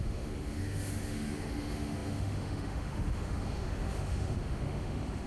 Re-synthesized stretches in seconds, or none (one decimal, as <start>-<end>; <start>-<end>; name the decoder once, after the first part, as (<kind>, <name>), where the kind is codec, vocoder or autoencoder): 0.0-5.3 (autoencoder, DAC-VAE)